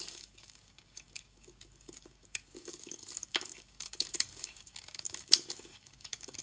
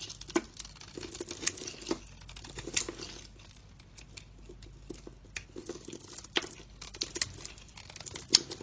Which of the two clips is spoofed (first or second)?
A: first